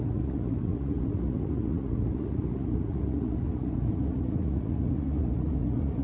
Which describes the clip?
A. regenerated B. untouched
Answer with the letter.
A